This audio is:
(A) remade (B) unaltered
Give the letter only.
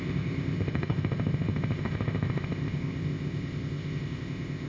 A